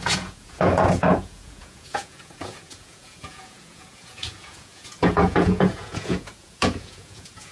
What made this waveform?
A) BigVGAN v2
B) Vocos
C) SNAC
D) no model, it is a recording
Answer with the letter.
B